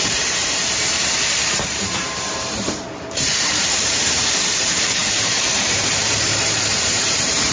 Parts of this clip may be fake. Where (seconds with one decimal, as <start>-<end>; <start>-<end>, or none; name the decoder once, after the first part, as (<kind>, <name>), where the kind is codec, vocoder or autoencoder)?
0.0-7.5 (vocoder, BigVGAN v2)